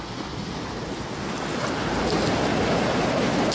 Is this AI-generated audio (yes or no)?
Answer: no